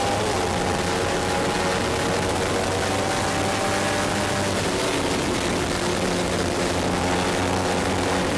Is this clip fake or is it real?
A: real